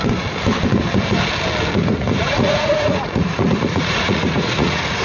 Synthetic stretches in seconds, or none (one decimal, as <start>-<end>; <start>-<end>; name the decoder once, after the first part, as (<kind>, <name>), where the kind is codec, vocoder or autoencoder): 1.8-5.0 (vocoder, Vocos)